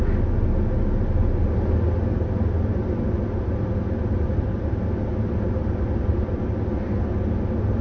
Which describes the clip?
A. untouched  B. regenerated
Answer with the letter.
A